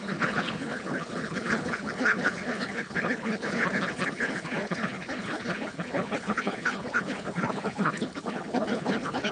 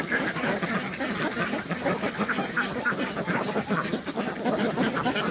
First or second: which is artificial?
first